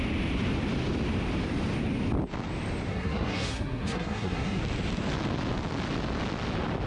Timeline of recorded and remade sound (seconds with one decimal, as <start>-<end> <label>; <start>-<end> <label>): 0.0-2.9 recorded; 2.9-4.6 remade; 4.6-6.9 recorded